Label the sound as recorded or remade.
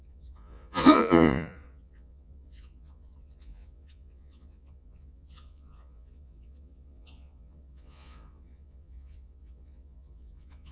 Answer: remade